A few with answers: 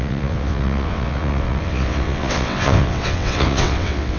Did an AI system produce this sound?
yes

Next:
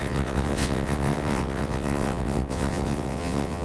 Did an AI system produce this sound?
yes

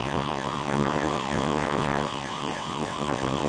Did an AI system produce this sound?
yes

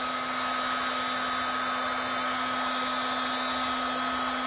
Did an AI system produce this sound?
no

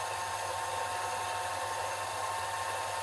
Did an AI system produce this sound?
no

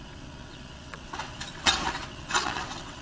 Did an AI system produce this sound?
yes